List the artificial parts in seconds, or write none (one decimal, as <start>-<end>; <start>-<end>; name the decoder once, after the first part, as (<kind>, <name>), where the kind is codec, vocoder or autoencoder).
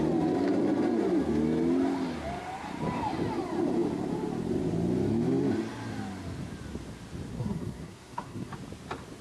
7.3-8.5 (codec, SNAC)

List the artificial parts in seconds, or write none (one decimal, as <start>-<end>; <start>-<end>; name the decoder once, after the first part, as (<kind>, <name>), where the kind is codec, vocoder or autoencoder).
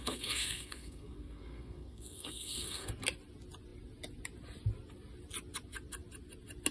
0.0-2.9 (codec, SNAC)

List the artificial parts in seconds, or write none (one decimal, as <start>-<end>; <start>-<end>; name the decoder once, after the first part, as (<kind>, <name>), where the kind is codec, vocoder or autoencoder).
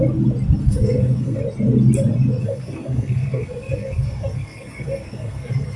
0.6-1.4 (codec, SNAC); 2.4-5.8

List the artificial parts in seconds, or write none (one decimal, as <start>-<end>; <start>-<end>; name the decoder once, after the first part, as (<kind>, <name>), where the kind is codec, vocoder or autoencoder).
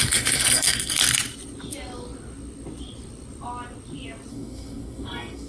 0.0-1.0 (codec, SNAC); 4.3-5.5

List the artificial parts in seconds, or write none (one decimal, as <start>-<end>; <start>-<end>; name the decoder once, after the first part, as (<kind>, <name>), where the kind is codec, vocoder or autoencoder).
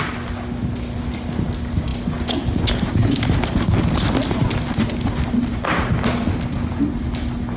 none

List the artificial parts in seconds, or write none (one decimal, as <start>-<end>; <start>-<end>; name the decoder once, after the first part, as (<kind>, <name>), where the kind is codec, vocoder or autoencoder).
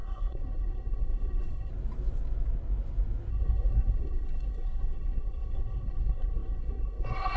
0.0-1.7 (codec, SNAC); 3.3-7.4